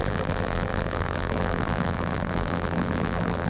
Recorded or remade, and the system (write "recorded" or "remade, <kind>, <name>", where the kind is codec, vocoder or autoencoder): remade, vocoder, BigVGAN v2